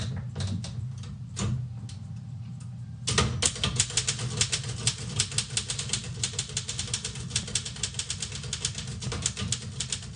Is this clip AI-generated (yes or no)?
no